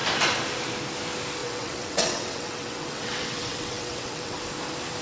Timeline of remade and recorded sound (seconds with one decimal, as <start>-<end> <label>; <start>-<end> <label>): 0.0-1.4 recorded; 1.4-4.4 remade; 4.4-5.0 recorded